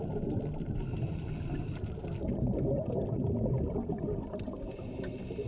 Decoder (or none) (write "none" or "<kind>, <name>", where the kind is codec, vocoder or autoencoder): none